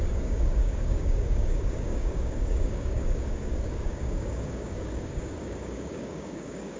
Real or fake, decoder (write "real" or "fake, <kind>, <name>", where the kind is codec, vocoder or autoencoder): fake, codec, DAC